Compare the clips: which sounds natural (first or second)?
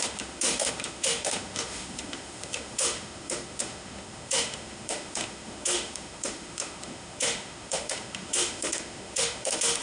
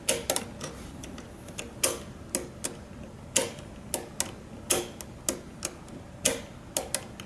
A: second